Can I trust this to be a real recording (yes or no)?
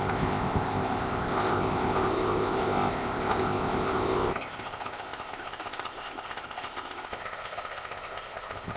no